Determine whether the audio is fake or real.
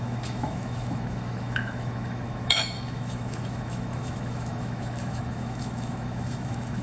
fake